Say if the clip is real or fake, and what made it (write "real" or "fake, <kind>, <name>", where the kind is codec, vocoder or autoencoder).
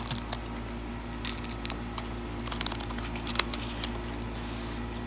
real